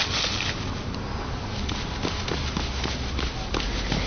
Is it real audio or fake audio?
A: real